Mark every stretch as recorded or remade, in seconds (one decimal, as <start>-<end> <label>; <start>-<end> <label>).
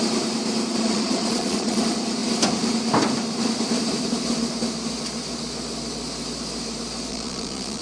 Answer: 0.0-0.7 recorded; 0.7-1.8 remade; 1.8-7.1 recorded; 7.1-7.8 remade